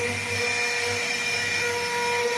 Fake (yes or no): no